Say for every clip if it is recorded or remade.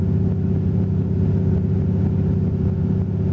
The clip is recorded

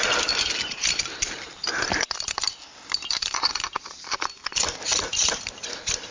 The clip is remade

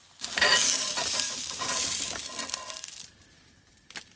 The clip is remade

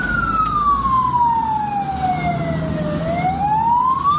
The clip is recorded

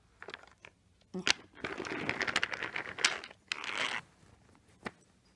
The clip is recorded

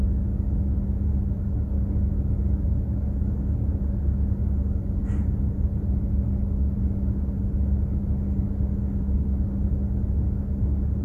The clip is recorded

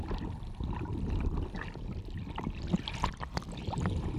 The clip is recorded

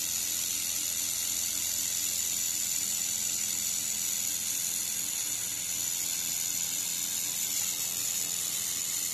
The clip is recorded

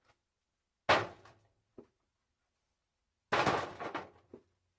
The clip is recorded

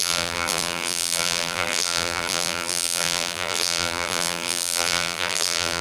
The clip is remade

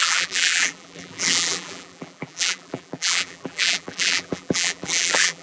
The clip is remade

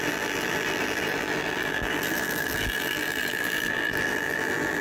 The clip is remade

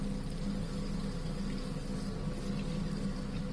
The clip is recorded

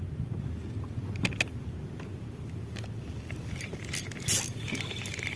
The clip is recorded